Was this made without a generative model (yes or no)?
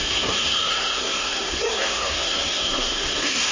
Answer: no